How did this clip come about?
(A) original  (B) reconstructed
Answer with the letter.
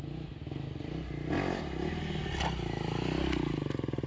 A